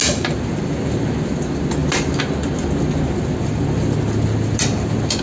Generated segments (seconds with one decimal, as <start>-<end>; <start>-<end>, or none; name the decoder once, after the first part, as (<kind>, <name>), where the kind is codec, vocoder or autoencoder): none